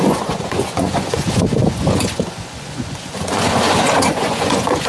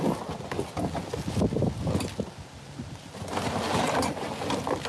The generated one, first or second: first